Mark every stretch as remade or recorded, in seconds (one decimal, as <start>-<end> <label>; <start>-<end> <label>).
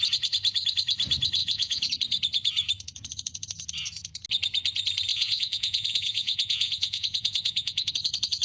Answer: 0.0-1.4 recorded; 1.4-1.9 remade; 1.9-5.1 recorded; 5.1-7.9 remade; 7.9-8.4 recorded